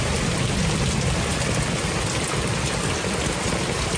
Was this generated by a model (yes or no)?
no